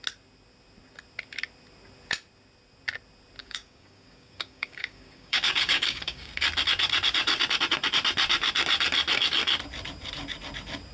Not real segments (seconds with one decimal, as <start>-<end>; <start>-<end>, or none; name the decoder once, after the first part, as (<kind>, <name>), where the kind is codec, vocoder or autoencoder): 3.4-6.3 (codec, DAC)